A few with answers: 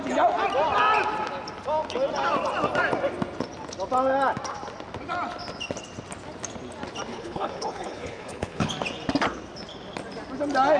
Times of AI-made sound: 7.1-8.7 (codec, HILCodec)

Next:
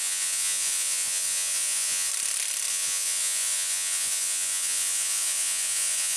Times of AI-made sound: 0.0-2.1 (vocoder, Vocos); 2.7-6.2

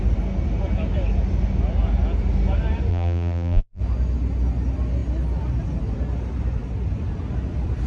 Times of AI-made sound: 2.9-3.8 (vocoder, BigVGAN v2)

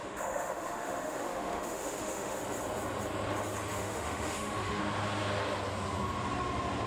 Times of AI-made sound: 0.0-2.4 (autoencoder, DAC-VAE); 3.7-4.8

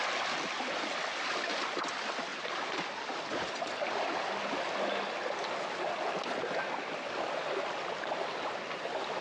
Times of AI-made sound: none

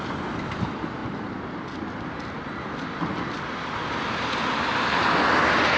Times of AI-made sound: none

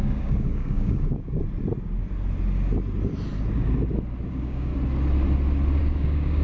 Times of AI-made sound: 0.0-1.4 (codec, DAC); 4.3-4.7; 5.8-6.4